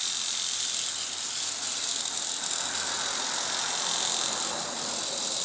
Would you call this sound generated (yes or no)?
no